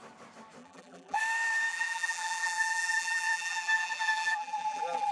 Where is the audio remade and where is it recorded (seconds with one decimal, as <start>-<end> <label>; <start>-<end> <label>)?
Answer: 0.0-0.6 recorded; 0.6-1.2 remade; 1.2-1.7 recorded; 1.7-5.1 remade